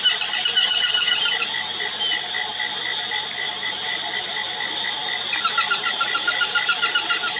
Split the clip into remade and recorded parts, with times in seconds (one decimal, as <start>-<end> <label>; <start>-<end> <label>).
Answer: 0.0-0.6 recorded; 0.6-1.2 remade; 1.2-7.4 recorded